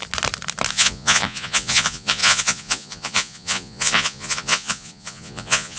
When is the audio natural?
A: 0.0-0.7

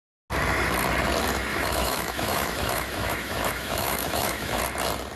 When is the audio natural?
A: 0.0-1.5; 4.6-5.2

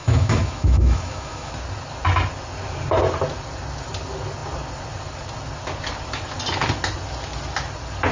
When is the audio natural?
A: 1.5-8.1

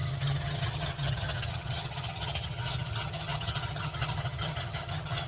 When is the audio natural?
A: none

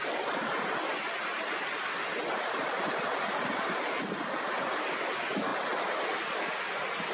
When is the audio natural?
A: 0.0-7.1